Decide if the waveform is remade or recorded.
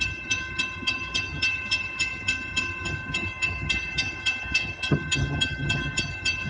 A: remade